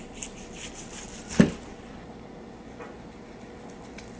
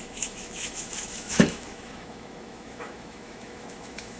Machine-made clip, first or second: second